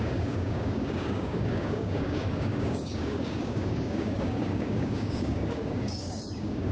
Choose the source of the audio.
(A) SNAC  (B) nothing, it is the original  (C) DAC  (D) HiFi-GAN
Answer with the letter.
C